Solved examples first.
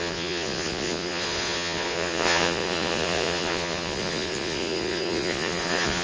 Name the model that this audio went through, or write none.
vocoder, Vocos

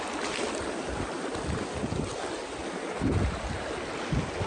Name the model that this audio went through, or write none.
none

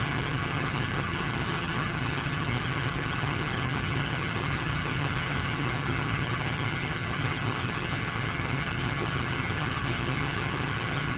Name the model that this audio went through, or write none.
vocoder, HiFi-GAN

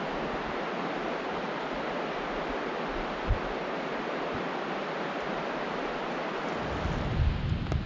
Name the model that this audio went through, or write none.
none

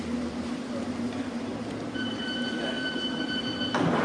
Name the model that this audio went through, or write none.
vocoder, BigVGAN v2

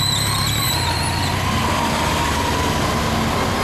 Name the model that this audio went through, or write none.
none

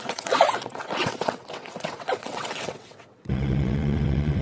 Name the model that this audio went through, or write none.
vocoder, WaveNeXt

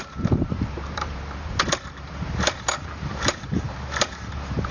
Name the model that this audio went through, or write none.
vocoder, BigVGAN v2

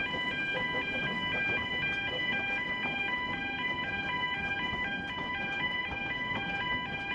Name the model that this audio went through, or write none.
none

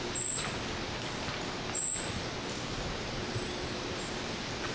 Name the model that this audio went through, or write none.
none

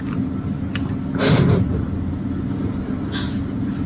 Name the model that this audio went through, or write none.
none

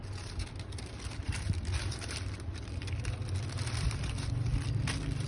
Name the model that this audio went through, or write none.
vocoder, BigVGAN v2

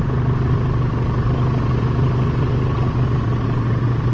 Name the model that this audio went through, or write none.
none